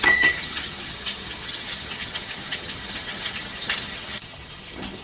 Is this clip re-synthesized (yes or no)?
yes